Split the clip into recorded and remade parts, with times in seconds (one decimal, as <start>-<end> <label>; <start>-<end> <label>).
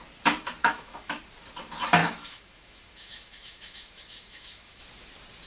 0.0-0.6 recorded; 0.6-1.2 remade; 1.2-2.0 recorded; 2.0-4.8 remade; 4.8-5.5 recorded